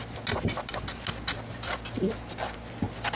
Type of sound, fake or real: real